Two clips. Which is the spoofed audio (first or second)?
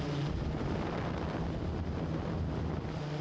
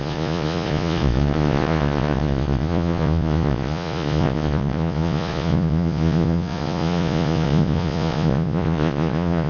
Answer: second